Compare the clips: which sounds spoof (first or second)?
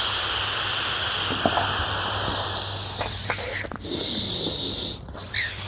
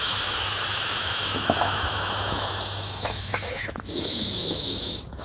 second